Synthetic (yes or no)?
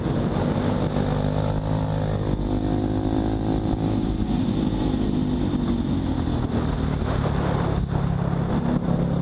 no